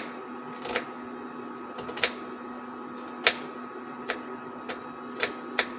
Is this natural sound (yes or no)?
yes